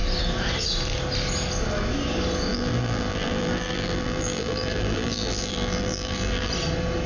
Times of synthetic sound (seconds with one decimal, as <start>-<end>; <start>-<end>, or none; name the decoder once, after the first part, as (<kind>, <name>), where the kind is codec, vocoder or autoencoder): 2.5-6.5 (vocoder, BigVGAN v2)